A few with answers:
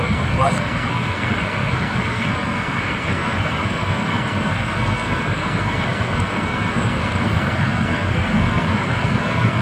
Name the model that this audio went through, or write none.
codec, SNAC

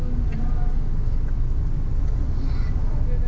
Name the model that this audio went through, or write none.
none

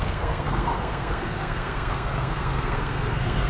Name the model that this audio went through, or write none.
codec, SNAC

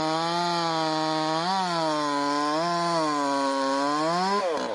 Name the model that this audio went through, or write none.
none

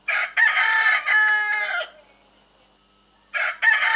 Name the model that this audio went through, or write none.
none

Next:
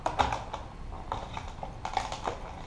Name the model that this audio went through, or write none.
none